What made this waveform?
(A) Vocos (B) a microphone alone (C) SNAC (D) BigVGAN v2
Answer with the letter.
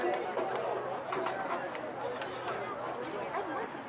B